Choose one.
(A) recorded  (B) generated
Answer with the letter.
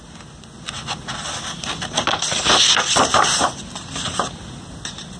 A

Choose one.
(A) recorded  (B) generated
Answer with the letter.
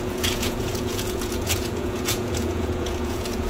B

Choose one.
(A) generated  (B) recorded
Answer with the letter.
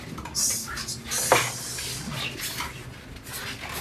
B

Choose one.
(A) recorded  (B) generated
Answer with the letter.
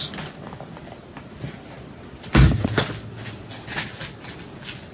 A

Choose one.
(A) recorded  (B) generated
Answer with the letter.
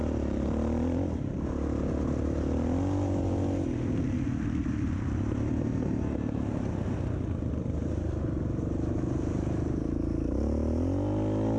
A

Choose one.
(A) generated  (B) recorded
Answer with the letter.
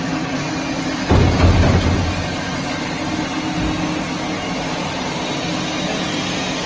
B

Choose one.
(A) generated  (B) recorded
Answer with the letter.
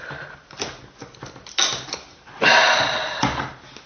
B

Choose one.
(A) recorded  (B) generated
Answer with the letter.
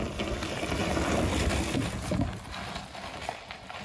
A